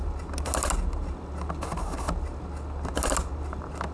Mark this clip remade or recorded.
recorded